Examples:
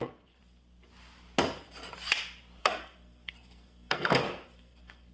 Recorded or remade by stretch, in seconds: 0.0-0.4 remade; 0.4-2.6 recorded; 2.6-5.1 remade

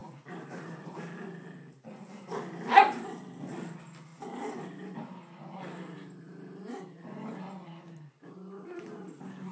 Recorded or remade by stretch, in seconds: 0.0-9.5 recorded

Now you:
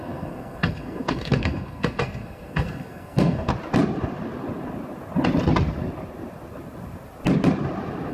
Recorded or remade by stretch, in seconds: 0.0-3.5 remade; 3.5-8.1 recorded

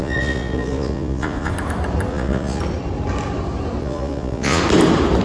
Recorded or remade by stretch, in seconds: 0.0-1.5 remade; 1.5-2.1 recorded; 2.1-2.6 remade; 2.6-3.8 recorded; 3.8-4.6 remade; 4.6-5.2 recorded